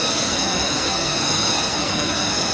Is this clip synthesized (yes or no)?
yes